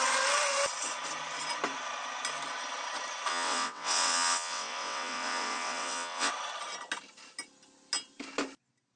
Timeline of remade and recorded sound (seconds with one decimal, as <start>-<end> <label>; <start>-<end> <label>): 0.0-3.3 recorded; 3.3-6.3 remade; 6.3-9.0 recorded